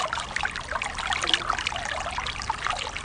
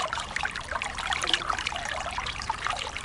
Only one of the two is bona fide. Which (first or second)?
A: first